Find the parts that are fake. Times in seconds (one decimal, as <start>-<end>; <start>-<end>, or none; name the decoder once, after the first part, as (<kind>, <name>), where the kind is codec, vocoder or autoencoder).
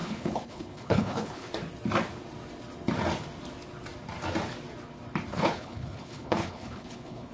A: 0.0-1.5 (codec, HILCodec); 5.3-7.3